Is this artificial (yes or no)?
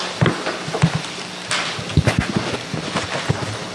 no